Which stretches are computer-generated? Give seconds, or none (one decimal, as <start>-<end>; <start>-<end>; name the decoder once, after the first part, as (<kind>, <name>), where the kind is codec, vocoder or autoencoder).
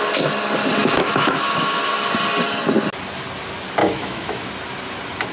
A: 0.8-1.8 (autoencoder, DAC-VAE); 3.8-4.5